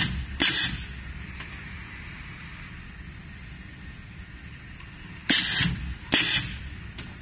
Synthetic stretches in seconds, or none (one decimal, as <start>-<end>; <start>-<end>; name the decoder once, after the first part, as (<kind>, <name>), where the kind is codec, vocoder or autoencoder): none